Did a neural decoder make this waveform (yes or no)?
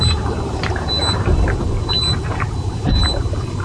yes